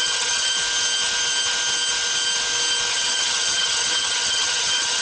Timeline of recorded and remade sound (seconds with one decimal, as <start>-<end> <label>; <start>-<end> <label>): 0.0-0.5 remade; 0.5-2.9 recorded; 2.9-5.0 remade